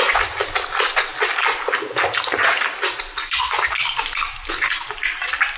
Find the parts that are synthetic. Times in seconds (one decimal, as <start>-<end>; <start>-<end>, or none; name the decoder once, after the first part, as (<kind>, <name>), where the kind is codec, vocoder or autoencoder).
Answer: none